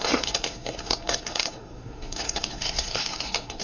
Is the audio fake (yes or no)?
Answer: yes